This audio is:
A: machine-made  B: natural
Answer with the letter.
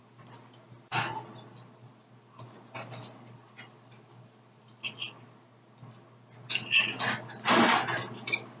B